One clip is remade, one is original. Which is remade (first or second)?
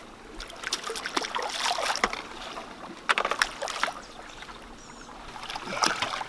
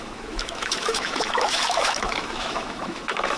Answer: second